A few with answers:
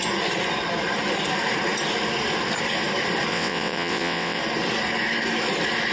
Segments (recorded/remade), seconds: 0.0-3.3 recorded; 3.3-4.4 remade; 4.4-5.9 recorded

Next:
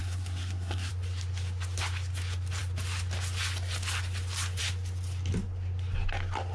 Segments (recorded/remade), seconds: 0.0-0.9 remade; 0.9-6.5 recorded

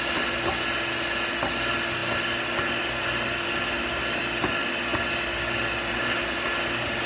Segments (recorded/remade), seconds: 0.0-7.1 recorded

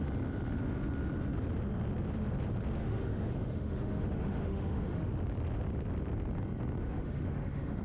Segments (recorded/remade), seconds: 0.0-2.8 recorded; 2.8-5.1 remade; 5.1-6.8 recorded; 6.8-7.8 remade

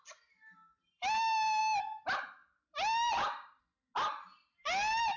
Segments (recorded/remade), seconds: 0.0-0.7 recorded; 0.7-1.6 remade; 1.6-2.4 recorded; 2.4-3.6 remade; 3.6-5.2 recorded

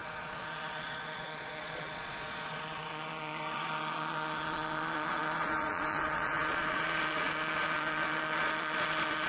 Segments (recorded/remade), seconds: 0.0-9.3 remade